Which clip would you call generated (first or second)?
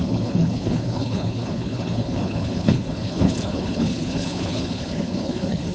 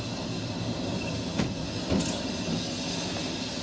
first